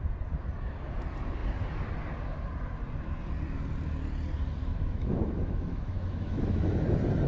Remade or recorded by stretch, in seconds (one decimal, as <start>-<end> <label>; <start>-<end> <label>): 0.0-4.6 recorded; 4.6-6.7 remade; 6.7-7.3 recorded